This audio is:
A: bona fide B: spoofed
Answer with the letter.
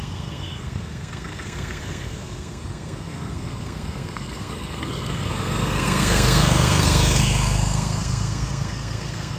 B